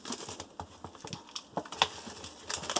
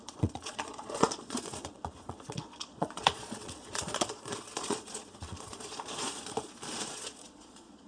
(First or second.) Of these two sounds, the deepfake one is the second